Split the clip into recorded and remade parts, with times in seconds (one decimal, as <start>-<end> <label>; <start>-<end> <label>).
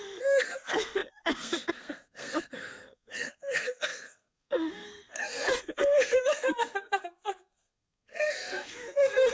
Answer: 0.0-9.3 remade